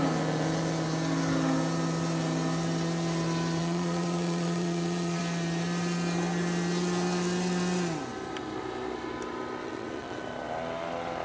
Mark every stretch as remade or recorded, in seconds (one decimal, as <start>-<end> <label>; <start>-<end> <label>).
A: 0.0-3.6 recorded; 3.6-5.2 remade; 5.2-9.6 recorded; 9.6-10.2 remade; 10.2-11.2 recorded